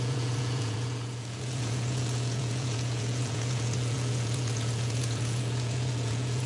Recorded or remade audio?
remade